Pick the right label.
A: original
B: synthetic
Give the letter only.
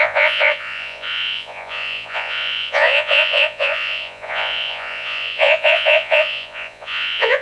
B